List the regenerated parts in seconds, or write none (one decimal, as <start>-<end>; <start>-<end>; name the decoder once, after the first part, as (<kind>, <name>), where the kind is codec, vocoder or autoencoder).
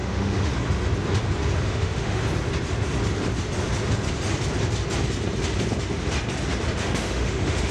0.0-0.5 (autoencoder, DAC-VAE); 1.6-2.2; 6.8-7.7